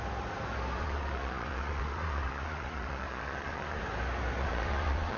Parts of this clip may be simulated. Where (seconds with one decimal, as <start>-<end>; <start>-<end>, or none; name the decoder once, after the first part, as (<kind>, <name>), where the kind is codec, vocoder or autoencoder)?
0.8-3.8 (vocoder, Vocos); 4.4-5.2